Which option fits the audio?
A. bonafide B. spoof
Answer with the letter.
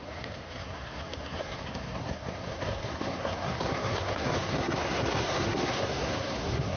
B